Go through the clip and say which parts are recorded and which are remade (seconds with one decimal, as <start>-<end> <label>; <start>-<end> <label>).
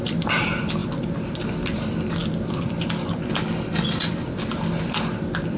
0.0-5.6 recorded